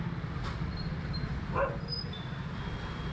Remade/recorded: recorded